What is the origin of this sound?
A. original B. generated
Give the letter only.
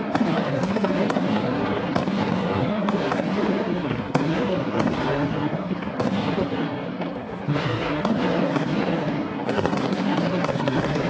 B